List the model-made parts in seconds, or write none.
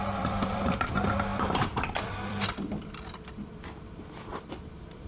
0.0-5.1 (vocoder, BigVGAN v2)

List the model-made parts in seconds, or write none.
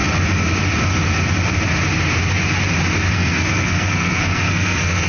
3.1-5.1 (codec, SNAC)